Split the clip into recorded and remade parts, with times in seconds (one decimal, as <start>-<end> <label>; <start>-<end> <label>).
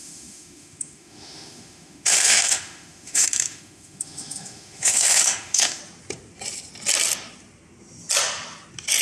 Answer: 0.0-5.8 remade; 5.8-9.0 recorded